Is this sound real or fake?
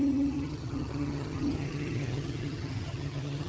fake